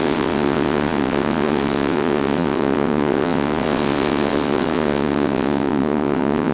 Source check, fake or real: fake